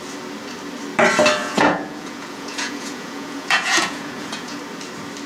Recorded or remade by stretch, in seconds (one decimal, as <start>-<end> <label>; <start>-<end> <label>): 0.0-1.4 recorded; 1.4-4.6 remade; 4.6-5.3 recorded